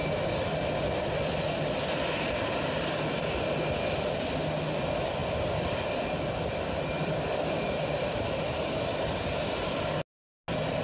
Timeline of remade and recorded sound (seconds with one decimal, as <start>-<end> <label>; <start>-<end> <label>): 0.0-5.2 recorded; 5.2-8.5 remade; 8.5-10.8 recorded